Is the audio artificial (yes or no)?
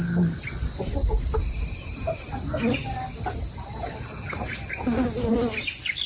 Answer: no